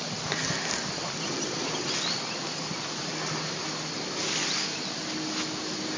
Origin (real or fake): real